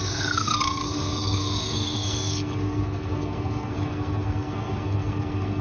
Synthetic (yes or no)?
yes